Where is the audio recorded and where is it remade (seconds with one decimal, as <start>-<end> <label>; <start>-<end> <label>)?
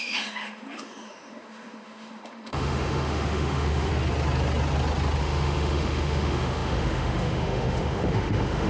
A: 0.0-3.9 remade; 3.9-5.2 recorded; 5.2-8.7 remade